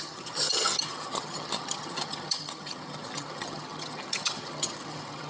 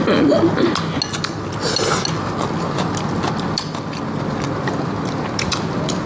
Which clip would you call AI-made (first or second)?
first